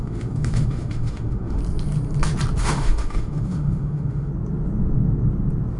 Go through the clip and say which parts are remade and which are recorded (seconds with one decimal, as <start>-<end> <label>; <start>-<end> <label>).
0.0-1.6 remade; 1.6-2.6 recorded; 2.6-4.3 remade; 4.3-5.8 recorded